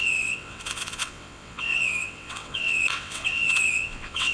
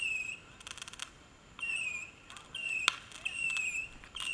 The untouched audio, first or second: second